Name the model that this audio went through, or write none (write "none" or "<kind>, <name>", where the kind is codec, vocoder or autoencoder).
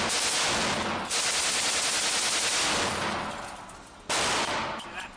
none